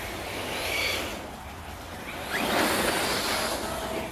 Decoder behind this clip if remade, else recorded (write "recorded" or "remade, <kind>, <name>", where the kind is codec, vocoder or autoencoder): recorded